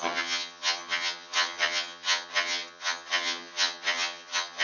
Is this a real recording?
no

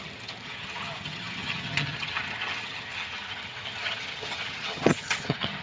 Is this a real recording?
no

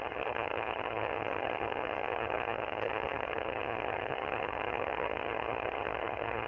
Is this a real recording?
no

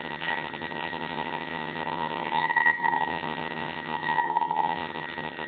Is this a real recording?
no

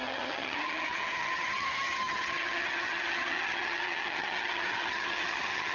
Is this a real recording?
no